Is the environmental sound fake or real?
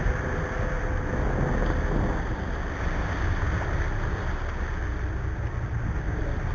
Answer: real